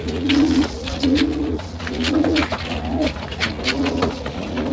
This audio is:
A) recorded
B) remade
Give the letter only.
B